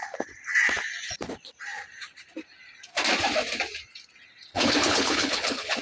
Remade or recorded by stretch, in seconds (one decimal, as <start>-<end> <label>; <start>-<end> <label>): 0.0-4.5 recorded; 4.5-5.8 remade